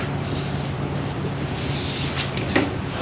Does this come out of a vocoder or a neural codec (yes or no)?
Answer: no